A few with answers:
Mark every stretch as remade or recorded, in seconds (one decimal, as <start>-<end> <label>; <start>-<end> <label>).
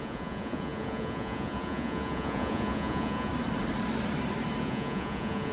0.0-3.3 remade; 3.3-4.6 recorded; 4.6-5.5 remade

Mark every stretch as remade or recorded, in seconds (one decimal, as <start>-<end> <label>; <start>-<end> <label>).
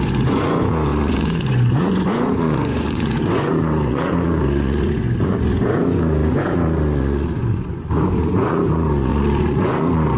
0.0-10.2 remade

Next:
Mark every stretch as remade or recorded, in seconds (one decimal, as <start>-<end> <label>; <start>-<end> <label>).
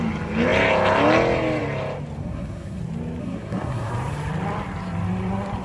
0.0-2.2 recorded; 2.2-2.8 remade; 2.8-3.2 recorded; 3.2-3.9 remade; 3.9-5.6 recorded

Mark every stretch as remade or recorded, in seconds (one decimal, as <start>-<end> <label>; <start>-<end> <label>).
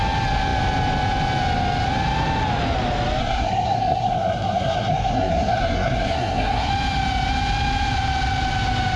0.0-3.2 recorded; 3.2-6.7 remade; 6.7-9.0 recorded